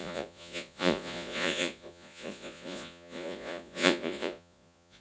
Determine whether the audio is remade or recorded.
remade